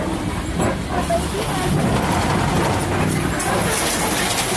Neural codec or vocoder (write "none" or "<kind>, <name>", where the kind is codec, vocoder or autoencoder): none